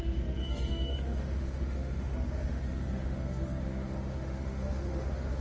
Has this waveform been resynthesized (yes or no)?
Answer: yes